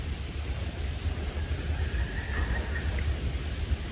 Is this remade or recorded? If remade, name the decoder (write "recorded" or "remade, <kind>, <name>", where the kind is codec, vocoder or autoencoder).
recorded